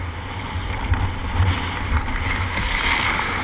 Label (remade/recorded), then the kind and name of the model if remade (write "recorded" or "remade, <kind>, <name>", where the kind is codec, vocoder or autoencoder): recorded